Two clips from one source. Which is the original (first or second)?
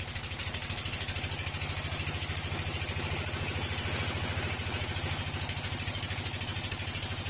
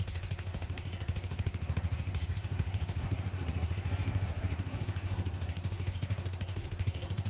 first